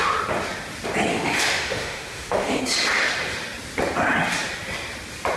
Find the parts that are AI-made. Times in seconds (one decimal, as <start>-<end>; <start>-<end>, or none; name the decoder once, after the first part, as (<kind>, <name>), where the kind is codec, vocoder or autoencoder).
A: 1.1-2.6 (autoencoder, DAC-VAE)